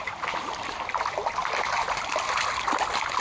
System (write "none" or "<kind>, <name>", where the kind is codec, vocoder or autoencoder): none